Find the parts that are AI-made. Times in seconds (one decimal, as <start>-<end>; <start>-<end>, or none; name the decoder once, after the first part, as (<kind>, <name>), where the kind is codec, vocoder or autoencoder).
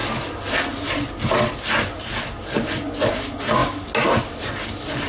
none